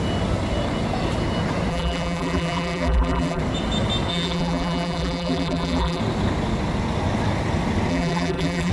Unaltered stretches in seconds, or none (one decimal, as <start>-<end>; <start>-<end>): 0.0-1.7; 3.4-4.1; 6.0-7.9